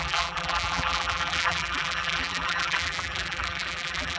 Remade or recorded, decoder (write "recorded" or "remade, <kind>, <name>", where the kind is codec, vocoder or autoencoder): remade, vocoder, BigVGAN v2